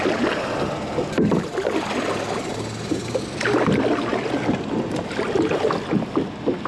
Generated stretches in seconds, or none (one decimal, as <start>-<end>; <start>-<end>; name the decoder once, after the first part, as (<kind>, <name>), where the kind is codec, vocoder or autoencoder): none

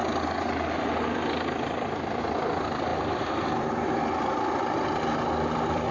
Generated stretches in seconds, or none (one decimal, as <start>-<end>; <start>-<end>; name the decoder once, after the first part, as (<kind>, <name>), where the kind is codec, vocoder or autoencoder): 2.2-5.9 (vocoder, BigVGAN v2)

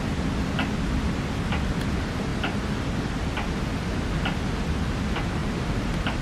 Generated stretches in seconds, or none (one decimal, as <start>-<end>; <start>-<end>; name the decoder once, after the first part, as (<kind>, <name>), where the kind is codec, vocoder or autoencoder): 5.4-6.2 (vocoder, BigVGAN v2)